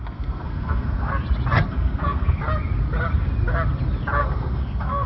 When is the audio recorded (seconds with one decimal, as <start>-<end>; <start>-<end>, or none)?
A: 1.1-1.7; 2.4-4.2